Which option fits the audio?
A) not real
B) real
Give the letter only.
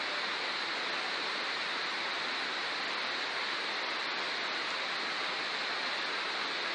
B